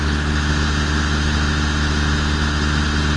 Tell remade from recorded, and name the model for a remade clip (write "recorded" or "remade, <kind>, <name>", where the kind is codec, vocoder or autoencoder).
recorded